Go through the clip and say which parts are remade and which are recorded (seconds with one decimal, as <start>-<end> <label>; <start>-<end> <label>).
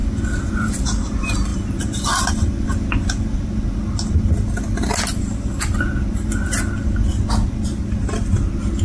0.0-8.8 recorded